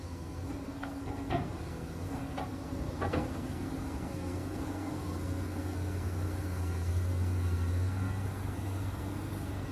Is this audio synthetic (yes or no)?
yes